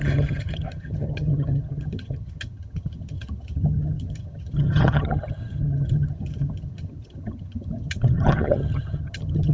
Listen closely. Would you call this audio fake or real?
fake